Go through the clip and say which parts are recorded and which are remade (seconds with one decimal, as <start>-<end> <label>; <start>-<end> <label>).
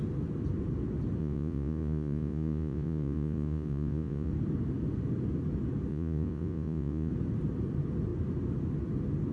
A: 0.0-1.2 recorded; 1.2-4.3 remade; 4.3-5.9 recorded; 5.9-7.1 remade; 7.1-9.3 recorded